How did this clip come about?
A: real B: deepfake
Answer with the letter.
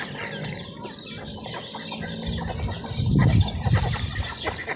A